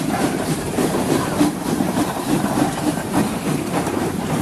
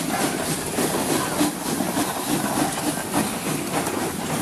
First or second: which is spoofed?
first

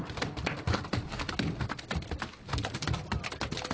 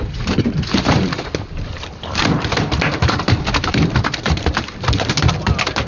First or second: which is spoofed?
second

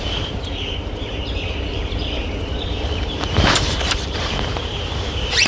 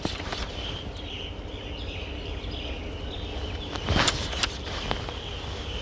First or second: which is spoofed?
first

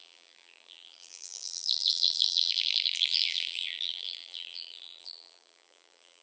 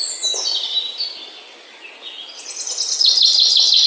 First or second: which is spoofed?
first